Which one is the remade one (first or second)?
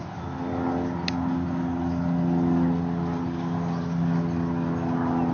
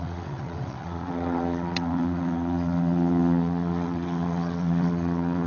second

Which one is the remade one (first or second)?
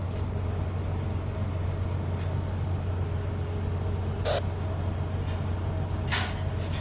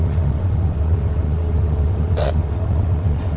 second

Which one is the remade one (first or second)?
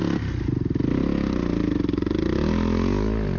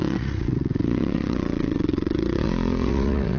second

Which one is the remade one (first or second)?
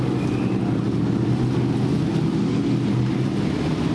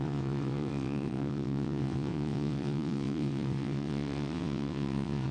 second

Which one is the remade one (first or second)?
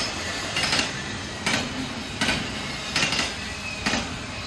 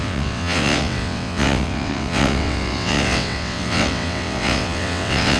second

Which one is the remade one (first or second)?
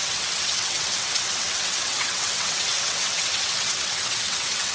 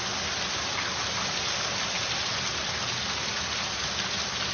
first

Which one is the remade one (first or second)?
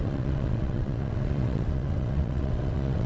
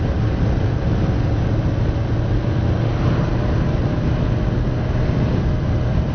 first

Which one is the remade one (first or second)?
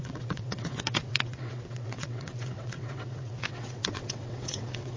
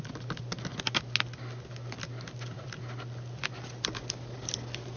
first